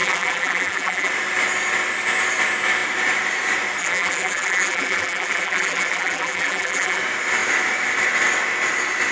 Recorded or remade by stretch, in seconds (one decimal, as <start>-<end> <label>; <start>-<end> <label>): 0.0-1.1 remade; 1.1-3.8 recorded; 3.8-7.0 remade; 7.0-9.1 recorded